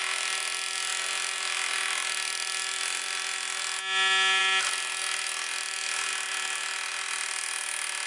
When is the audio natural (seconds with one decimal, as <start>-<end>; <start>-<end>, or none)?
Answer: 0.0-8.1

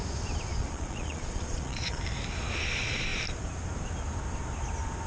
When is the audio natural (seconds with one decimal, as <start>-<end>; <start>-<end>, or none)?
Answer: 0.0-0.5; 2.0-5.1

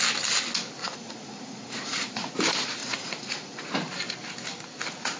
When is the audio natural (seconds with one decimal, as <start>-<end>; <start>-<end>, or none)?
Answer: 0.0-0.8; 2.3-2.8; 3.7-5.2

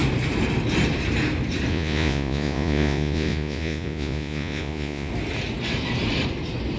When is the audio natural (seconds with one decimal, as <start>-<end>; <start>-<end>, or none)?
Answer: 0.0-1.7; 5.1-6.8

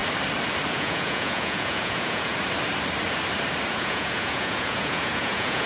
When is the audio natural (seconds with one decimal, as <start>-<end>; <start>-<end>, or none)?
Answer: 0.0-0.7; 2.3-3.7

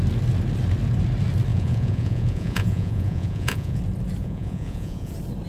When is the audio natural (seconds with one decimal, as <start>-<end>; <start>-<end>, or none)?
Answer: 0.0-1.5; 3.8-4.2; 5.1-5.5